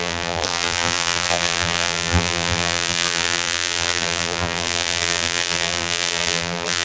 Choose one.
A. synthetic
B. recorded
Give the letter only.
A